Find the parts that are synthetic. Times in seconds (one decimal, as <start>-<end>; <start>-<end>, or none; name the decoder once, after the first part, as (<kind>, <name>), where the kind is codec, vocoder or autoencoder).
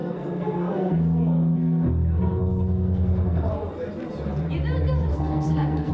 0.0-3.5 (codec, SNAC); 5.1-5.9